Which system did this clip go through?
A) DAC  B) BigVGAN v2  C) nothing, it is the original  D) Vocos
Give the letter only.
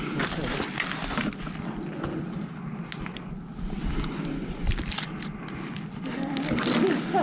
C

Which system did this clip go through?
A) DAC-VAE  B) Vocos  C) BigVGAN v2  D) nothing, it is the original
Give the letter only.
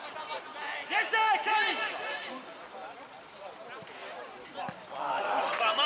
D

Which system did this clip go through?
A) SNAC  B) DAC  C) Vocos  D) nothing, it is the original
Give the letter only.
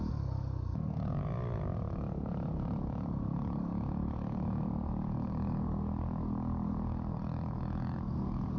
B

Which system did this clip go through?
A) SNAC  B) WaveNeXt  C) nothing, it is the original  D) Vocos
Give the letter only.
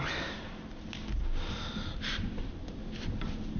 C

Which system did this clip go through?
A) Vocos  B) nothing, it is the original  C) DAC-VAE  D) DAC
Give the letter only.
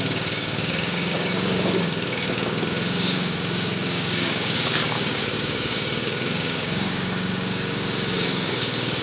D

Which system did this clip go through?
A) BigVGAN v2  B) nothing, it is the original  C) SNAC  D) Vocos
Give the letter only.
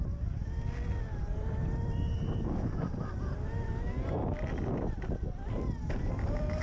B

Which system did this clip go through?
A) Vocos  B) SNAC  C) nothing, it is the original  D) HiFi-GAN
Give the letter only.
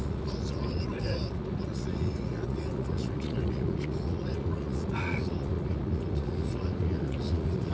A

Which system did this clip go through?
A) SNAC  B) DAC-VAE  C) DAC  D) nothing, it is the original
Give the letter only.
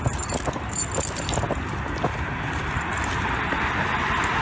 D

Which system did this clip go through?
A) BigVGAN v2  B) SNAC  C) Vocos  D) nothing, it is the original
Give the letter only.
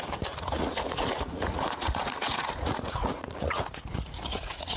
C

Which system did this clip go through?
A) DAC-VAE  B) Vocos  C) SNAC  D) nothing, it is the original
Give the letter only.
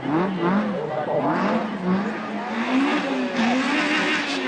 D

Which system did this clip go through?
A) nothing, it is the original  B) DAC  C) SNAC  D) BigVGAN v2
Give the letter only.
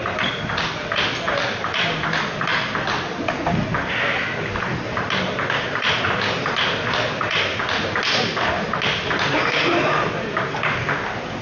A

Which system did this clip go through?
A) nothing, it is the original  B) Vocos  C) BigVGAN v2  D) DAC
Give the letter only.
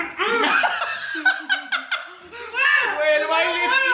A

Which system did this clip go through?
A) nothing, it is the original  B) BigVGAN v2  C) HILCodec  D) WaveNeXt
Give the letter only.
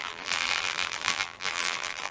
B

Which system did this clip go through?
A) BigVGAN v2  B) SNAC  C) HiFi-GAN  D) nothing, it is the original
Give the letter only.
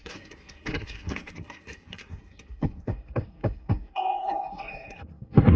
B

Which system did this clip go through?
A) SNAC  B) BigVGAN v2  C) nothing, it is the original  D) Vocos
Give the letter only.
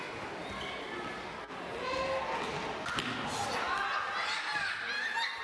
C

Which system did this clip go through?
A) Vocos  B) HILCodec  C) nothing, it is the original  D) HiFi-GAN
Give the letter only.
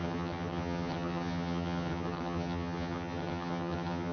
D